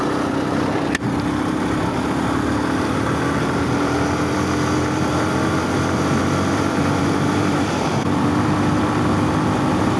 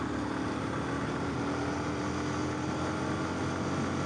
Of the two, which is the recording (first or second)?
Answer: second